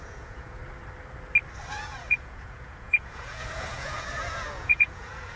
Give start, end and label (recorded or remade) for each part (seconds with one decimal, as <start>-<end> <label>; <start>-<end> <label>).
0.0-0.6 remade; 0.6-1.8 recorded; 1.8-5.4 remade